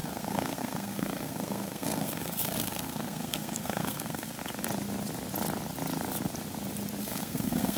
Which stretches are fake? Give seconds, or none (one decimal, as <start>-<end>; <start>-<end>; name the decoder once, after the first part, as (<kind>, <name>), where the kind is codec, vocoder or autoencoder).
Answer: 0.0-4.4 (codec, SNAC); 7.0-7.8